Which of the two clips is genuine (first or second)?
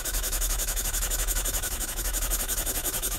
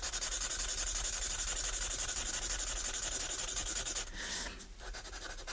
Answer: second